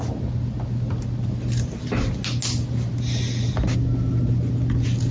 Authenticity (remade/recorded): recorded